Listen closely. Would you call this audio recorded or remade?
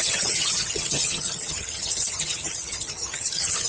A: remade